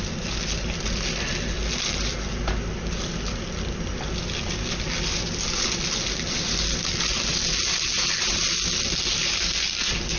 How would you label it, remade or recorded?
recorded